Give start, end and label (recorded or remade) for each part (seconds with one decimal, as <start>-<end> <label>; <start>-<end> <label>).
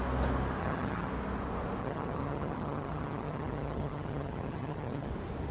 0.0-0.6 recorded; 0.6-1.1 remade; 1.1-1.8 recorded; 1.8-5.1 remade; 5.1-5.5 recorded